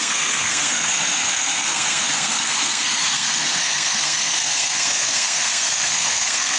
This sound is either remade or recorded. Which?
remade